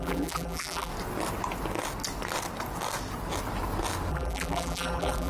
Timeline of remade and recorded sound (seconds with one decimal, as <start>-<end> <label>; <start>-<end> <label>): 0.0-0.9 remade; 0.9-4.1 recorded; 4.1-5.3 remade